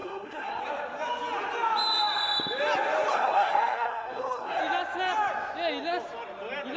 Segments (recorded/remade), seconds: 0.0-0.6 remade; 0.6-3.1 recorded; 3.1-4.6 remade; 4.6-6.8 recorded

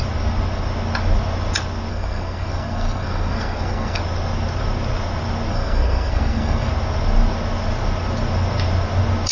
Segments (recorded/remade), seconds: 0.0-1.9 recorded; 1.9-4.0 remade; 4.0-5.5 recorded; 5.5-6.7 remade; 6.7-9.3 recorded